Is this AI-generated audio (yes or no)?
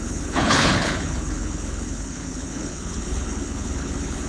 yes